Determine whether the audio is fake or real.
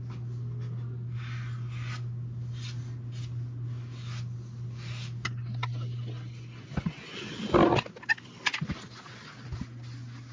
real